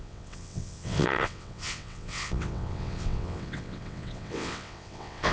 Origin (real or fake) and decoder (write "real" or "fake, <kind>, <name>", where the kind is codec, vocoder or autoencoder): fake, vocoder, WaveNeXt